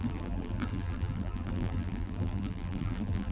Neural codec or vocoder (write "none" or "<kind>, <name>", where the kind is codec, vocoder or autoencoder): vocoder, BigVGAN v2